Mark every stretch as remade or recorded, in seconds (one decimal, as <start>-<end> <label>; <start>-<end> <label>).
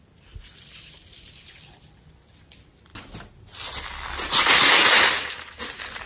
0.0-6.1 recorded